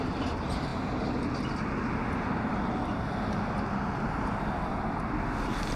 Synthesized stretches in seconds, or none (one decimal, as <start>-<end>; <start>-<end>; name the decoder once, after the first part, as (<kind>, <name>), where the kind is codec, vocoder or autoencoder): none